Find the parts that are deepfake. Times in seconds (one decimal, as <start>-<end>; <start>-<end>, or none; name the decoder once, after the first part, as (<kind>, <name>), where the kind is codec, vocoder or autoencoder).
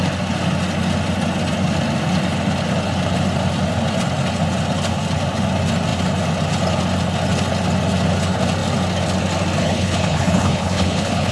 9.6-11.3 (codec, HILCodec)